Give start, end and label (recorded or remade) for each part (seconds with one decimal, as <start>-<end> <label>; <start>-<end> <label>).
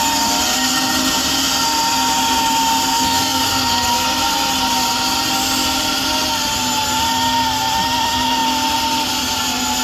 0.0-2.9 recorded; 2.9-3.4 remade; 3.4-9.8 recorded